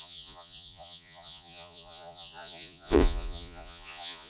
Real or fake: fake